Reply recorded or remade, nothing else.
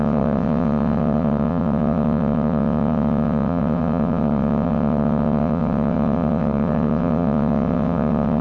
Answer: remade